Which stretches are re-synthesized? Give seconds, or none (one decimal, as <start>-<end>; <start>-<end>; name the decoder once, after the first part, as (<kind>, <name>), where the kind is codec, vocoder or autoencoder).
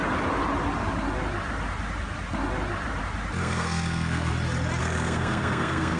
3.4-4.3 (codec, SNAC); 4.8-6.0